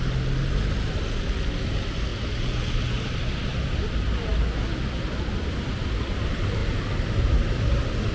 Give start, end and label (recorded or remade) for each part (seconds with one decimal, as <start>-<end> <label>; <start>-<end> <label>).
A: 0.0-8.1 recorded